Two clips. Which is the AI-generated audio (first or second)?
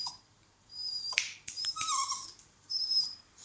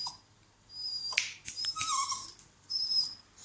first